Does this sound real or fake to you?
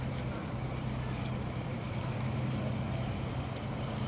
fake